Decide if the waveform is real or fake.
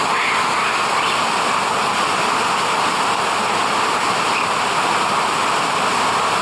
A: real